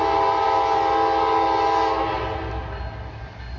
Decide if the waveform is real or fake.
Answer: real